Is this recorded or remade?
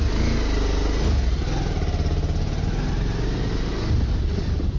recorded